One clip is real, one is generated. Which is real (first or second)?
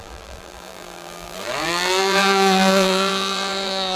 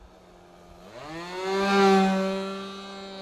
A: second